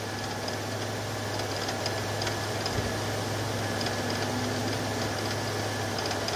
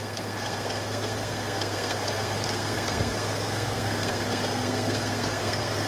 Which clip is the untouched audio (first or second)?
first